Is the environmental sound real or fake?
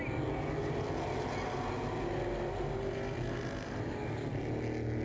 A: real